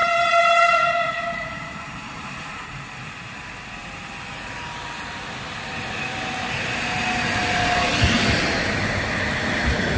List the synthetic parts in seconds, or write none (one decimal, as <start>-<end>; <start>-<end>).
0.0-3.2